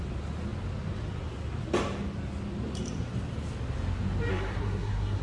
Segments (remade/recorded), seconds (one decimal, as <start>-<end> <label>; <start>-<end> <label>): 0.0-4.3 recorded; 4.3-5.2 remade